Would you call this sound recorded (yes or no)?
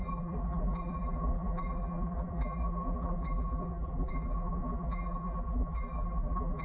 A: no